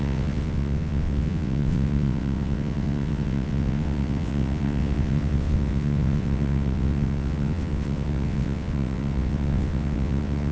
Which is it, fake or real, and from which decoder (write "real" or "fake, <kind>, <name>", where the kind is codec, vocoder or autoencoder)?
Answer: fake, vocoder, WaveNeXt